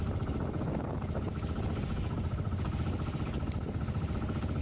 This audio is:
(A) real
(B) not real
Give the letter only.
A